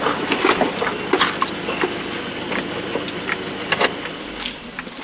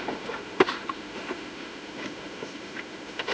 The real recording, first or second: first